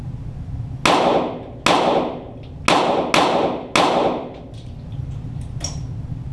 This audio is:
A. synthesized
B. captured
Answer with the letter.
B